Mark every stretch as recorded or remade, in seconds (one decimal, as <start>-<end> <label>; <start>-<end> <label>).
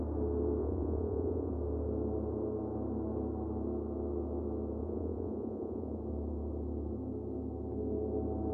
0.0-0.6 recorded; 0.6-1.5 remade; 1.5-4.8 recorded; 4.8-6.0 remade; 6.0-8.5 recorded